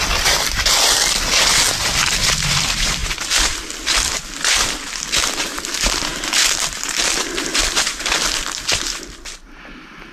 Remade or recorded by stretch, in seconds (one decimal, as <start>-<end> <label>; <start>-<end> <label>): 0.0-10.1 recorded